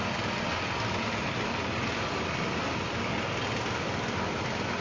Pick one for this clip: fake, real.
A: real